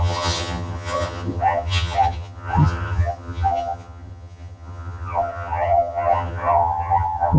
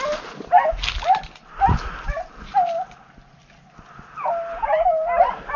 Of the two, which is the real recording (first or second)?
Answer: second